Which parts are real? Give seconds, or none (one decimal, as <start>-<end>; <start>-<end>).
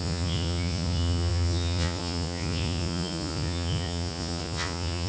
none